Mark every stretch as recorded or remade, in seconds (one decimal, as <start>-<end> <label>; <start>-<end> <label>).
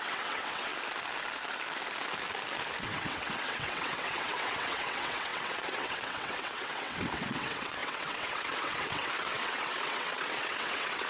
0.0-0.7 remade; 0.7-2.8 recorded; 2.8-11.1 remade